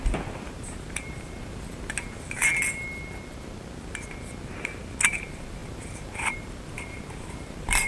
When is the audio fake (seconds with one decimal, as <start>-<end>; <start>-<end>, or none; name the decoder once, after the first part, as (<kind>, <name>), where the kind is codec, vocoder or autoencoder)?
0.0-2.5 (vocoder, BigVGAN v2); 5.1-7.9